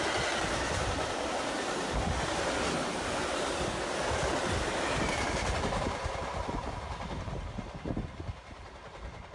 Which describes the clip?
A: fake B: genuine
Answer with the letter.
B